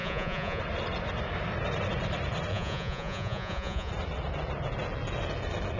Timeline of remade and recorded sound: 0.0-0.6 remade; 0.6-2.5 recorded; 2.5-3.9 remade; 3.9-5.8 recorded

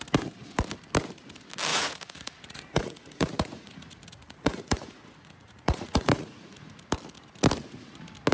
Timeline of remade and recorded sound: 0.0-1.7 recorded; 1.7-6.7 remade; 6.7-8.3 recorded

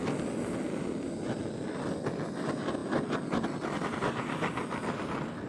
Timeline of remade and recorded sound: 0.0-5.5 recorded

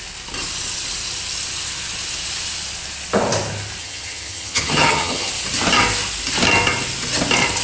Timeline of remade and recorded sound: 0.0-3.8 recorded; 3.8-5.3 remade; 5.3-7.6 recorded